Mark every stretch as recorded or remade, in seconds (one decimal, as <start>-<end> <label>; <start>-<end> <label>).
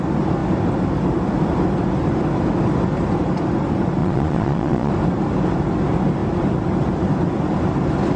0.0-4.0 recorded; 4.0-4.9 remade; 4.9-8.2 recorded